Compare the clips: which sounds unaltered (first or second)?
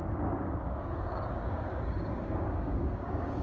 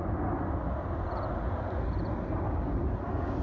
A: second